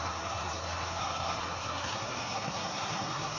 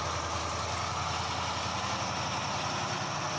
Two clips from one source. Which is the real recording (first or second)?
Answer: second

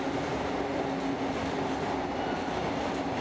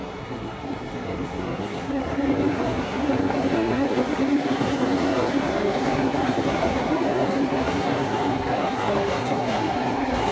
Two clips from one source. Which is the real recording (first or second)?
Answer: first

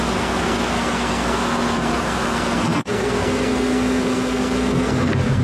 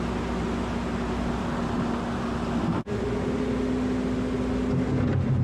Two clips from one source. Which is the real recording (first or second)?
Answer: second